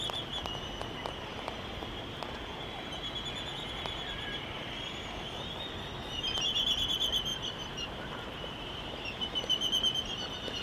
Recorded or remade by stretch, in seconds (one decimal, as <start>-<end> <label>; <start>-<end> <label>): 0.0-7.3 recorded; 7.3-9.0 remade; 9.0-10.6 recorded